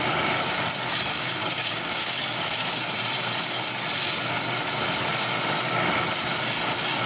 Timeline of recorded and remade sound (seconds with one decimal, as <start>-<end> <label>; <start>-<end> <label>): 0.0-1.1 recorded; 1.1-2.6 remade; 2.6-7.1 recorded